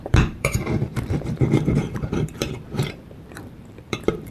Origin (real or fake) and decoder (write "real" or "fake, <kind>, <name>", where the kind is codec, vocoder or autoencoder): fake, vocoder, BigVGAN v2